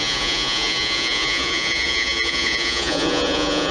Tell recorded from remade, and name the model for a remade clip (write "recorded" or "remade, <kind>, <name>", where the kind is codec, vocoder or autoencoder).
remade, vocoder, Vocos